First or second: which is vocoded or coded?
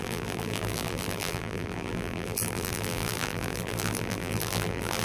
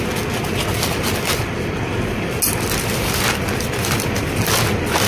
first